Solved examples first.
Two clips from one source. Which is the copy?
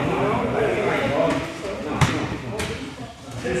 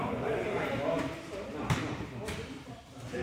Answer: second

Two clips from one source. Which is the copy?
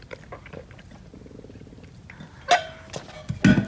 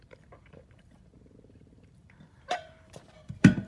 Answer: second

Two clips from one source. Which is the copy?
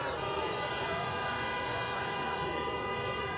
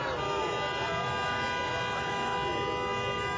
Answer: first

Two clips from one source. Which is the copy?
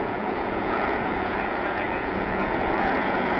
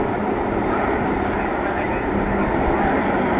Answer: first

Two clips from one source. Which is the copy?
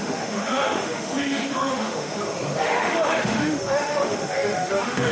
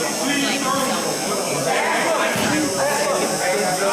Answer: first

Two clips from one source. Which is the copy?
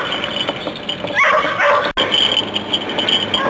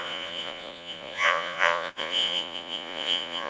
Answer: second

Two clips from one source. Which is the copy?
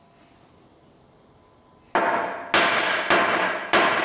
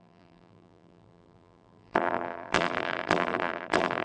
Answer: second